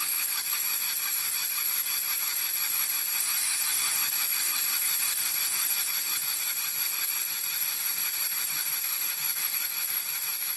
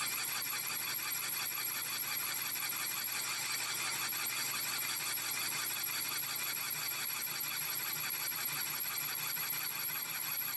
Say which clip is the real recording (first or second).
second